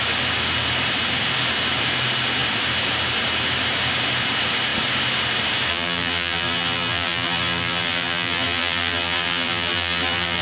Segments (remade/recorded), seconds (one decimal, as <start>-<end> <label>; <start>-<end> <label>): 0.0-5.7 recorded; 5.7-10.4 remade